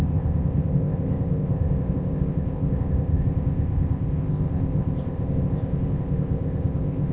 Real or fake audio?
fake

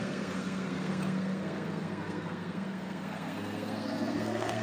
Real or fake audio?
fake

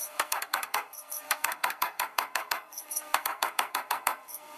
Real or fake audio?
fake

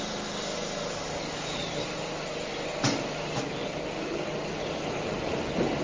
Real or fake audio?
real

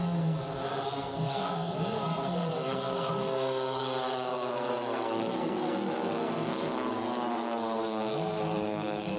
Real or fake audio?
fake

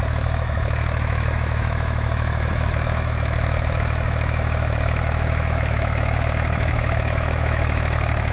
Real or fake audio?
fake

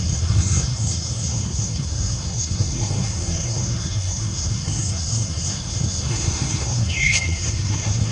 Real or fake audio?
fake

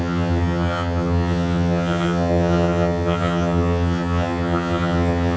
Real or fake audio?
fake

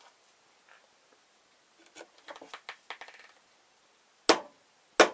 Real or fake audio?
real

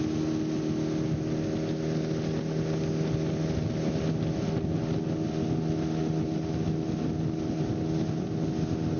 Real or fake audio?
real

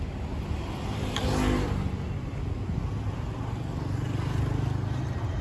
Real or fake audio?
real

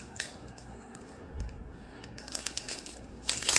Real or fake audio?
fake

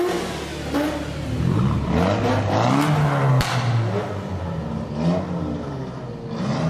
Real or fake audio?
real